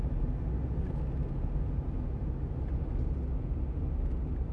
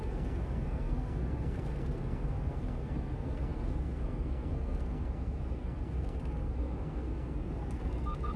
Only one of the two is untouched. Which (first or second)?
first